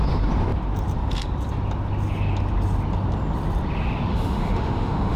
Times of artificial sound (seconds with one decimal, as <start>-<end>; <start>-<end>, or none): 4.1-5.2